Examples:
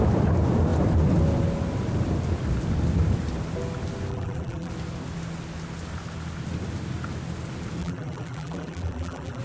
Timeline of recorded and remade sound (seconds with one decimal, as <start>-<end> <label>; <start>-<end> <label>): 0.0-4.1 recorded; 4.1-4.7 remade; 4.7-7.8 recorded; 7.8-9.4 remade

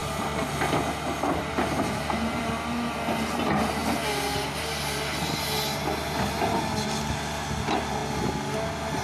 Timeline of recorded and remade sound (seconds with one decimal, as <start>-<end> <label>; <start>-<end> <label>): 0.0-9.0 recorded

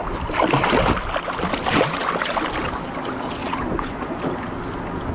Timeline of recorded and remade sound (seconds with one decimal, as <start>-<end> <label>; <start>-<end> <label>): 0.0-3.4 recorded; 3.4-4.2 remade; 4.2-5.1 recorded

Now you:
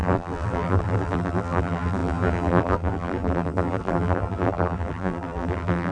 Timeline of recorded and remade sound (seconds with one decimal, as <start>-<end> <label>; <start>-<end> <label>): 0.0-5.9 remade

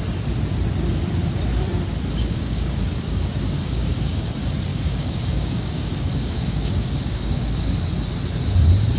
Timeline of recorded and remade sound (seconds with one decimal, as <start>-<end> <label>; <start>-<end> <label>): 0.0-2.2 recorded; 2.2-4.3 remade; 4.3-4.7 recorded; 4.7-7.7 remade; 7.7-9.0 recorded

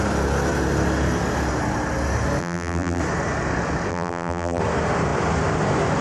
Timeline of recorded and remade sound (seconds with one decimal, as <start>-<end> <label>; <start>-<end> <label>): 0.0-2.4 recorded; 2.4-3.0 remade; 3.0-3.9 recorded; 3.9-4.6 remade; 4.6-6.0 recorded

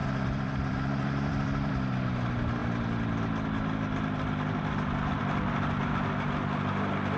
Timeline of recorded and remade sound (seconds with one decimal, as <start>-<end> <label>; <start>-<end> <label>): 0.0-1.7 remade; 1.7-7.2 recorded